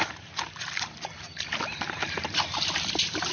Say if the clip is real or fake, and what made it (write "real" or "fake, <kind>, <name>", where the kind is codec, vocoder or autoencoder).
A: fake, vocoder, BigVGAN v2